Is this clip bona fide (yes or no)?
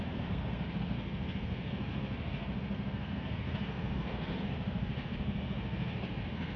no